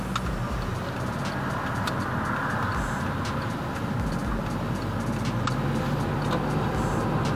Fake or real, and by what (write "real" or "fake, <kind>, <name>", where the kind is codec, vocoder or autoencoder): real